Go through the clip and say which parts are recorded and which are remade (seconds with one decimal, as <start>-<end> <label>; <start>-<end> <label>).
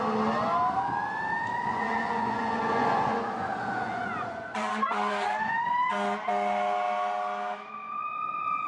0.0-1.5 recorded; 1.5-5.7 remade; 5.7-8.7 recorded